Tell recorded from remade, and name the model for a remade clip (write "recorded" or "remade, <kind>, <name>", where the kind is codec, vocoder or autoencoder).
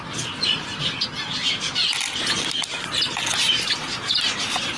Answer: recorded